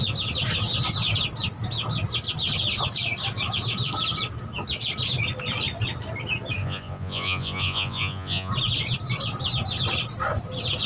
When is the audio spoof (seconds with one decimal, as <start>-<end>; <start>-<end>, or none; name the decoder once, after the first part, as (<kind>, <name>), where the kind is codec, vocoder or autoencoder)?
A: 6.6-8.5 (vocoder, Vocos)